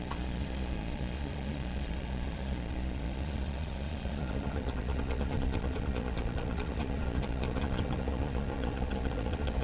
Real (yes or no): no